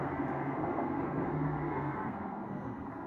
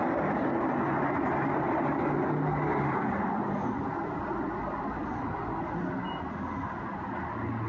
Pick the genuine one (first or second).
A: second